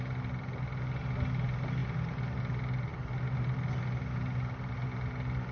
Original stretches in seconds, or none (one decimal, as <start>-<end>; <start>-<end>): 0.0-5.5